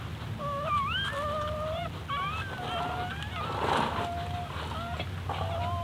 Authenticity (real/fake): real